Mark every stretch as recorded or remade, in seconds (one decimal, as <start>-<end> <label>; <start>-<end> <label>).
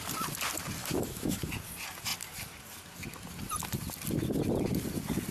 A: 0.0-0.8 recorded; 0.8-1.5 remade; 1.5-5.3 recorded